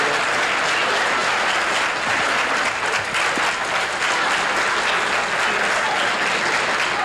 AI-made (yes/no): no